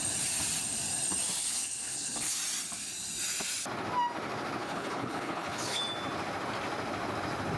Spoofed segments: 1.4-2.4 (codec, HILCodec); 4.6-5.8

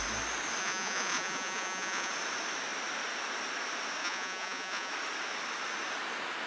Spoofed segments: 0.6-2.1 (vocoder, Vocos); 4.0-4.9